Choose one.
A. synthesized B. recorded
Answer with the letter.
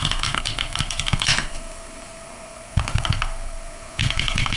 A